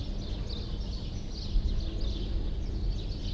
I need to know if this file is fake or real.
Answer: real